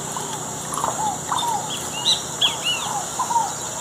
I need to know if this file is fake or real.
real